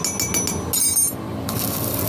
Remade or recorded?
recorded